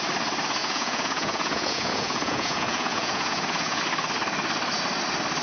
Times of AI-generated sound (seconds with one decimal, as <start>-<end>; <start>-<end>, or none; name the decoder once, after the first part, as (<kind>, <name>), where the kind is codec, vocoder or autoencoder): 0.6-3.8 (vocoder, Vocos)